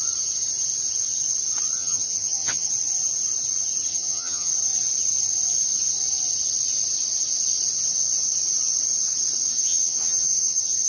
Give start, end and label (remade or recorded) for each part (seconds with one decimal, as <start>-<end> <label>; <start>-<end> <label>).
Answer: 0.0-1.8 recorded; 1.8-2.7 remade; 2.7-3.9 recorded; 3.9-4.5 remade; 4.5-9.5 recorded; 9.5-10.9 remade

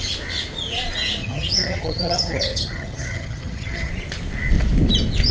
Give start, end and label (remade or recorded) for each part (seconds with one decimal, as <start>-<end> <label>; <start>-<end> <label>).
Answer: 0.0-1.2 recorded; 1.2-3.9 remade; 3.9-5.3 recorded

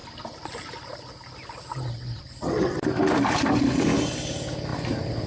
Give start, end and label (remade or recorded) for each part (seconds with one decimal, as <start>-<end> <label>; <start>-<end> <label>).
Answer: 0.0-5.3 recorded

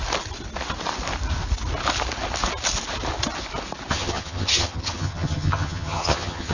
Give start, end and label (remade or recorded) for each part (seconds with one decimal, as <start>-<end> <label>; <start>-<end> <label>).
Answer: 0.0-3.9 recorded; 3.9-6.5 remade

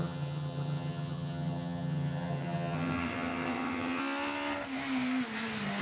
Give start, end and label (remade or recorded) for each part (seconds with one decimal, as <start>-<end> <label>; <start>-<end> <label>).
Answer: 0.0-4.0 remade; 4.0-5.8 recorded

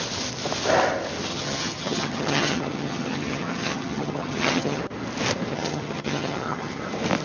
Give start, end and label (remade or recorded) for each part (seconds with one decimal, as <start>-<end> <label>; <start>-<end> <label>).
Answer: 0.0-1.3 recorded; 1.3-4.8 remade; 4.8-5.5 recorded; 5.5-6.8 remade; 6.8-7.2 recorded